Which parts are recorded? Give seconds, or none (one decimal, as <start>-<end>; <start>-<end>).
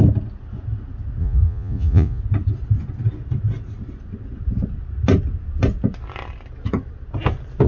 0.0-1.2; 2.2-7.7